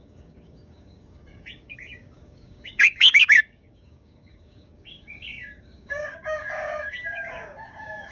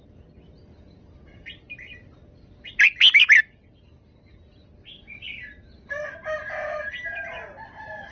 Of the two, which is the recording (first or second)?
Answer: second